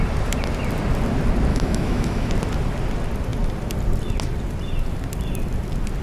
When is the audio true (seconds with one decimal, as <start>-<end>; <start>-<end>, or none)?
0.0-1.5; 2.3-6.0